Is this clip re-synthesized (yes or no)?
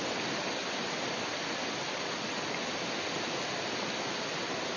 no